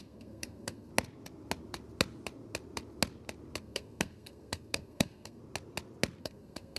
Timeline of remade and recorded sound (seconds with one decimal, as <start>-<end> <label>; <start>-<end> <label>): 0.0-0.9 remade; 0.9-3.6 recorded; 3.6-5.4 remade; 5.4-6.2 recorded; 6.2-6.8 remade